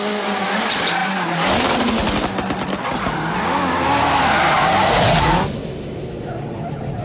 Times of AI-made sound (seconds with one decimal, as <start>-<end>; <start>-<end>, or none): none